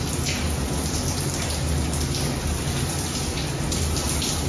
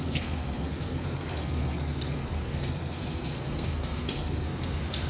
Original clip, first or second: first